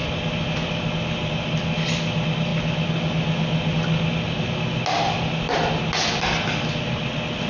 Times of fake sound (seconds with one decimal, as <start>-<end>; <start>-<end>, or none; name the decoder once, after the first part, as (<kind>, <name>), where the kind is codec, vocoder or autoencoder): none